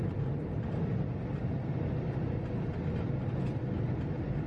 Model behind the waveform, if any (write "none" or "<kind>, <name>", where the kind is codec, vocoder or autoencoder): none